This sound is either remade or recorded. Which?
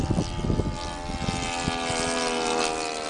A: recorded